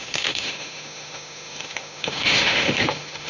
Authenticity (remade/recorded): remade